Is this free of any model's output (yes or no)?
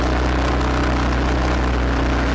yes